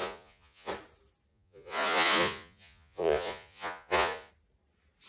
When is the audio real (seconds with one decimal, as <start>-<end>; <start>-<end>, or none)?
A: 0.7-1.3; 4.3-5.1